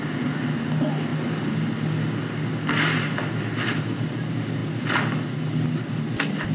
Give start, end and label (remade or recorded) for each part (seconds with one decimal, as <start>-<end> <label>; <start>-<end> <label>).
0.0-6.5 recorded